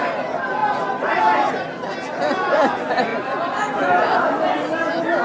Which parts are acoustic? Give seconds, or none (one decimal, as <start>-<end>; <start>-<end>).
0.0-5.2